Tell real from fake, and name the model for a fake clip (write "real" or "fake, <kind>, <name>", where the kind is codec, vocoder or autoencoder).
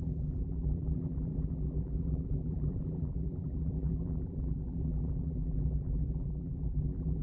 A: fake, vocoder, BigVGAN v2